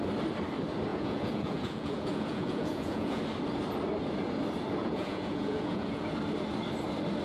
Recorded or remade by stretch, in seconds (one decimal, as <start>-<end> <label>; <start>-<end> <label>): 0.0-0.9 recorded; 0.9-3.2 remade; 3.2-4.8 recorded; 4.8-6.1 remade; 6.1-7.2 recorded